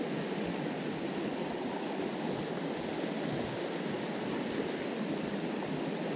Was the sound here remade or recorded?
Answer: recorded